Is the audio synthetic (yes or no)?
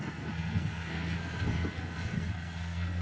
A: yes